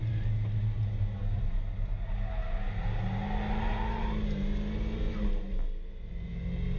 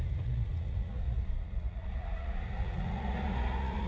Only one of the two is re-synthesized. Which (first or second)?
second